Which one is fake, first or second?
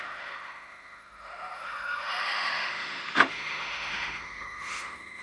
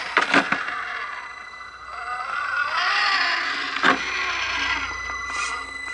first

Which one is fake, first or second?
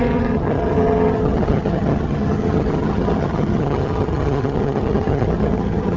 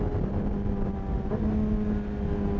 first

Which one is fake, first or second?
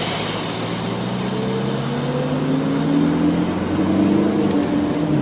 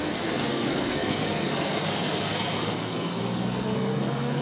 second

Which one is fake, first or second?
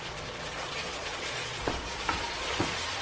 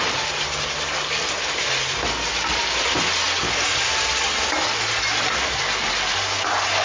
first